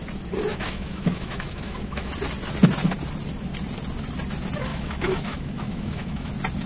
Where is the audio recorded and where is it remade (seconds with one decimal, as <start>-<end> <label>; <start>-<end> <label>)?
0.0-0.5 recorded; 0.5-2.1 remade; 2.1-4.7 recorded; 4.7-6.3 remade; 6.3-6.7 recorded